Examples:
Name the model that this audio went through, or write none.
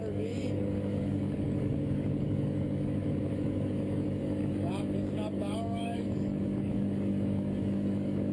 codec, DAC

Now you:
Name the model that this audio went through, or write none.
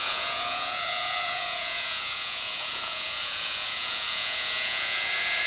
vocoder, Vocos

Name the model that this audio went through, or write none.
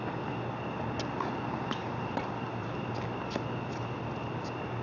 none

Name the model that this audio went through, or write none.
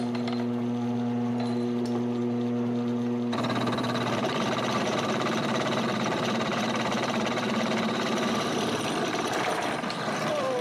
vocoder, BigVGAN v2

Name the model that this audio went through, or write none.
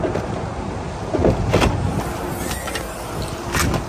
none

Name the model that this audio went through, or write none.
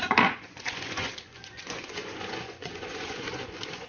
vocoder, Vocos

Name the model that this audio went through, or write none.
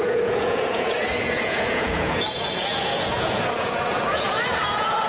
vocoder, Vocos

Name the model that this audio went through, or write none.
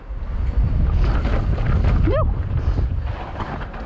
none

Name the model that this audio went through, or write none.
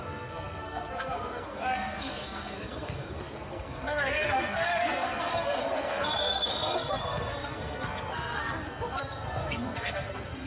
codec, SNAC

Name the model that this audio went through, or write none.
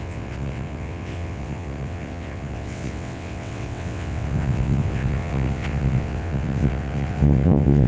vocoder, WaveNeXt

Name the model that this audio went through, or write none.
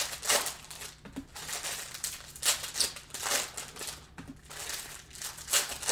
none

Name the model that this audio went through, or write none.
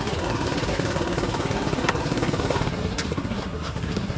codec, SNAC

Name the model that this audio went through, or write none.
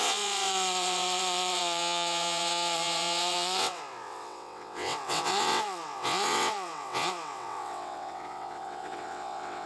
vocoder, WaveNeXt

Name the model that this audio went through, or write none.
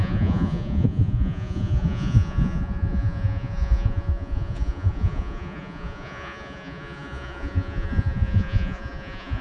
vocoder, Vocos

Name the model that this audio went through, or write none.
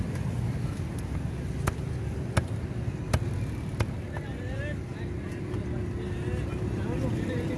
none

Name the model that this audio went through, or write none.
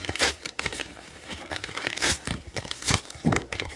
codec, SNAC